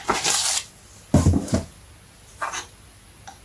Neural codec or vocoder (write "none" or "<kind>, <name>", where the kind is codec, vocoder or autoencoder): none